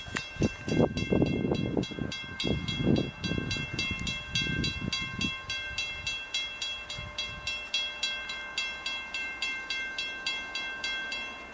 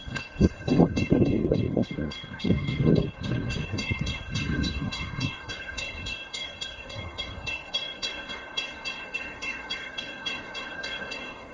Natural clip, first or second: first